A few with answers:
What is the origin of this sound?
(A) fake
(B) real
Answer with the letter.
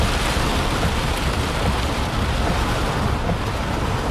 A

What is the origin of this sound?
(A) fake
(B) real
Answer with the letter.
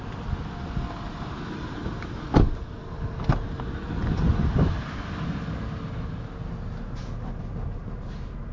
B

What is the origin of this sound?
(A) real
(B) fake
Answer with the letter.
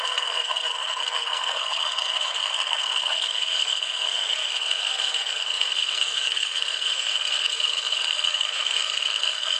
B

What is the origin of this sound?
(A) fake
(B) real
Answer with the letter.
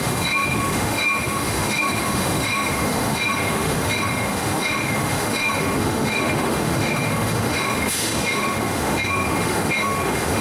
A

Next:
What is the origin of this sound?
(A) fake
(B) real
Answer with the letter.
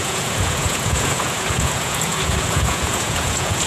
A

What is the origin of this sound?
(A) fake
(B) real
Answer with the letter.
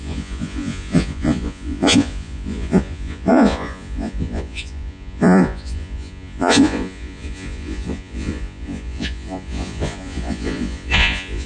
A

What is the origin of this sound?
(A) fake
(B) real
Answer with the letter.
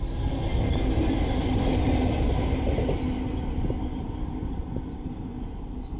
B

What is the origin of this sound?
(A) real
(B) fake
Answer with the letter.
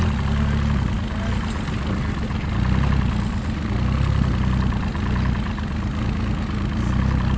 A